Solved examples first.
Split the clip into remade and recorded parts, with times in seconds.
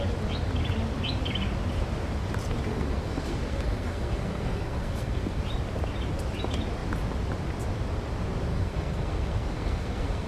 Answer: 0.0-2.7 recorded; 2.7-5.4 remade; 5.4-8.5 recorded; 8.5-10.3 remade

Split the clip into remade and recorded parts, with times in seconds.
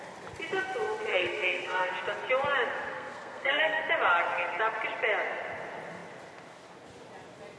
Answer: 0.0-1.1 recorded; 1.1-1.9 remade; 1.9-2.9 recorded; 2.9-3.8 remade; 3.8-7.6 recorded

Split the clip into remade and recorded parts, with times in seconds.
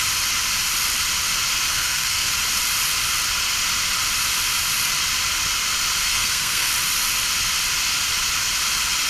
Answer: 0.0-1.7 recorded; 1.7-2.3 remade; 2.3-6.1 recorded; 6.1-6.7 remade; 6.7-9.1 recorded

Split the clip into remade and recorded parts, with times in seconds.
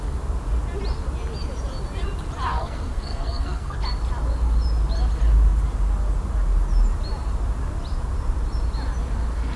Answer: 0.0-2.5 recorded; 2.5-3.8 remade; 3.8-9.6 recorded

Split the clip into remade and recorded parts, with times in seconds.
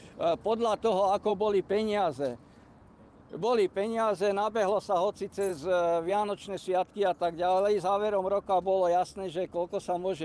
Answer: 0.0-10.2 recorded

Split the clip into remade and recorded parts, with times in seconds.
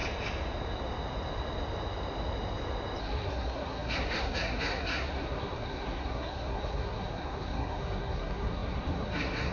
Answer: 0.0-3.0 recorded; 3.0-9.5 remade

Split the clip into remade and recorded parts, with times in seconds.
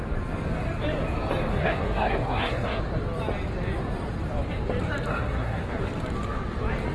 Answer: 0.0-1.5 recorded; 1.5-2.8 remade; 2.8-5.1 recorded; 5.1-5.8 remade; 5.8-6.9 recorded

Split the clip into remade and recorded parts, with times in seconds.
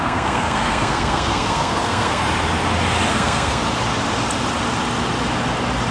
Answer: 0.0-2.2 remade; 2.2-3.1 recorded; 3.1-3.6 remade; 3.6-5.9 recorded